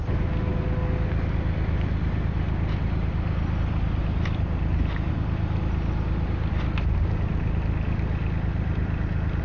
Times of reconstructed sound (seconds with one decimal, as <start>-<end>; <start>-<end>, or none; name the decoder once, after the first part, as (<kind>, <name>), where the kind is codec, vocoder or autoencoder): none